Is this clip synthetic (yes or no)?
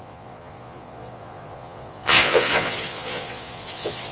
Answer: yes